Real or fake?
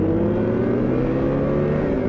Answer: real